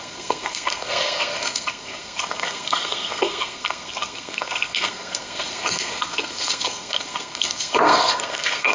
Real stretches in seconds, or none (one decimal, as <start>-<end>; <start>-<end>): none